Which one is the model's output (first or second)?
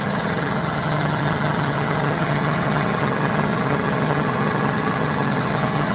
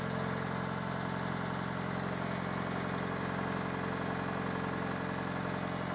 first